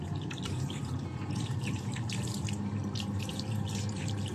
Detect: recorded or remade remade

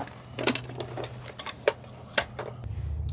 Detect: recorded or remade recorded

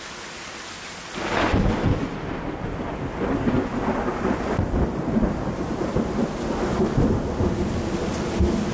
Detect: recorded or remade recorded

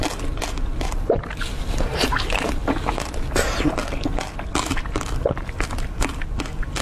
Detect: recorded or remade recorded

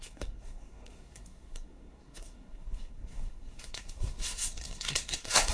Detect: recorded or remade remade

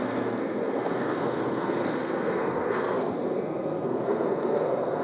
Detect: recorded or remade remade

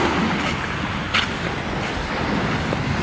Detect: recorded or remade recorded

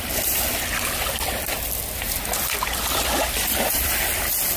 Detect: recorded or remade recorded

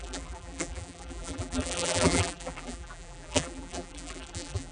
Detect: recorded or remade remade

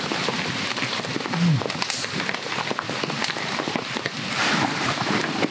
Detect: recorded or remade recorded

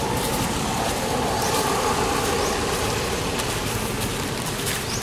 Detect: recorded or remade remade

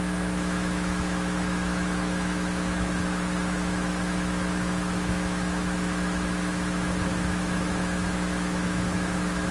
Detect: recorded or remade remade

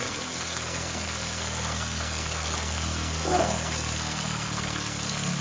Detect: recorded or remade remade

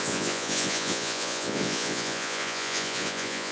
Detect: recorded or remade remade